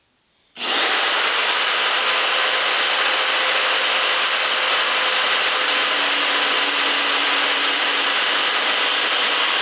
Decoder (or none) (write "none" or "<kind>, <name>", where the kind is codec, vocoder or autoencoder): none